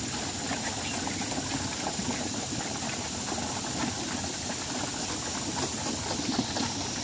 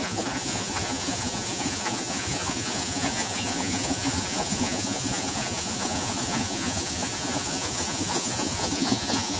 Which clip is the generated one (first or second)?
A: second